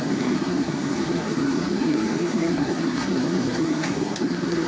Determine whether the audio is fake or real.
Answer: fake